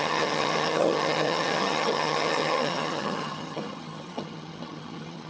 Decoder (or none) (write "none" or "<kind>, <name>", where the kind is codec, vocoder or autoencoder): vocoder, HiFi-GAN